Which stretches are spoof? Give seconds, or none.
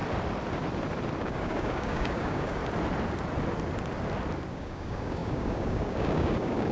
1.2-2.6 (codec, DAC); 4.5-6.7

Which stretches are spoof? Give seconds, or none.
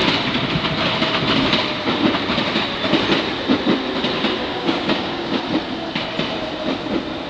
4.4-5.4 (codec, DAC)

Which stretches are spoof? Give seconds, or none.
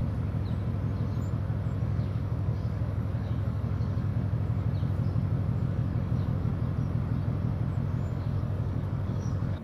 1.8-4.1 (codec, DAC); 5.6-6.5; 8.1-9.6